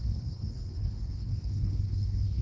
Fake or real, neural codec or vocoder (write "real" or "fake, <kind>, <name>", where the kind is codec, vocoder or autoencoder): fake, codec, HILCodec